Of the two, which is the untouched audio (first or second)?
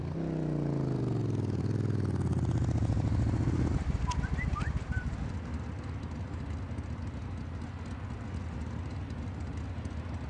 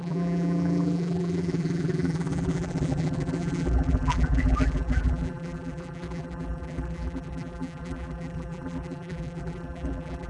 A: first